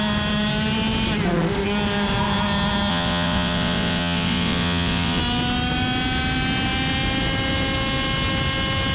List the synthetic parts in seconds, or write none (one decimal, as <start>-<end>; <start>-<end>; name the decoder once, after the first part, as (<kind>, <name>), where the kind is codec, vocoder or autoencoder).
2.9-5.2 (vocoder, WaveNeXt)